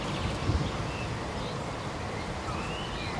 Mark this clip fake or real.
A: real